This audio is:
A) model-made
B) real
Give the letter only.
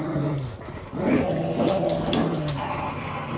B